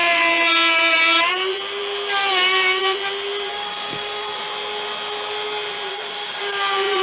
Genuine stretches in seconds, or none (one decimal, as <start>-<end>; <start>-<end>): 0.0-3.5; 4.4-5.9; 6.4-7.0